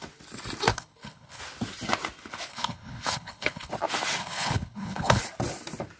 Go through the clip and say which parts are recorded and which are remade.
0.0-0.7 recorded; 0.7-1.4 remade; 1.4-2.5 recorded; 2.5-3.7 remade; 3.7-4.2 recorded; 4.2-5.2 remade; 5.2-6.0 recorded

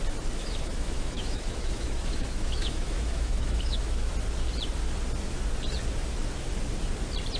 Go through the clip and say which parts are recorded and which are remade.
0.0-0.4 recorded; 0.4-4.1 remade; 4.1-7.4 recorded

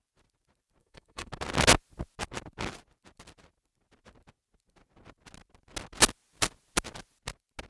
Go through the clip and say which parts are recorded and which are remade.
0.0-0.8 recorded; 0.8-1.3 remade; 1.3-7.7 recorded

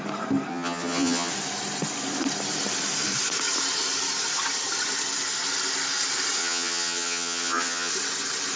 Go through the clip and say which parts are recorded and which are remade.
0.0-0.5 recorded; 0.5-1.3 remade; 1.3-6.4 recorded; 6.4-7.9 remade; 7.9-8.6 recorded

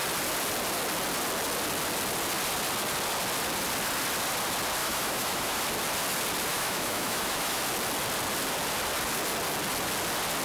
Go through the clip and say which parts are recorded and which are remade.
0.0-4.8 recorded; 4.8-5.6 remade; 5.6-6.5 recorded; 6.5-7.6 remade; 7.6-10.4 recorded

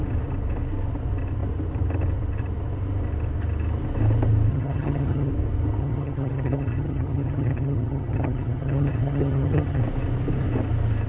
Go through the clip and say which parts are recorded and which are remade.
0.0-4.5 recorded; 4.5-5.3 remade; 5.3-5.8 recorded; 5.8-9.8 remade; 9.8-11.1 recorded